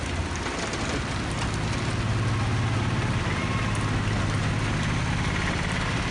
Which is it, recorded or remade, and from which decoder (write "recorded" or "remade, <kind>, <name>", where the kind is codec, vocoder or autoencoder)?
recorded